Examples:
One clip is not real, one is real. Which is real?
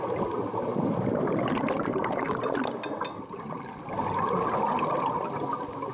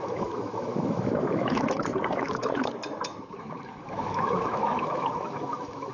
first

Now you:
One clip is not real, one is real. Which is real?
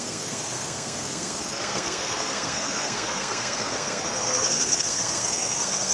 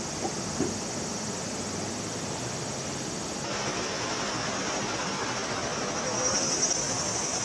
second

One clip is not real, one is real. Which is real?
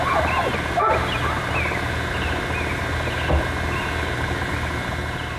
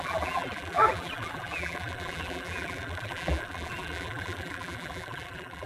first